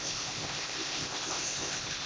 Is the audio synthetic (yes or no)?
yes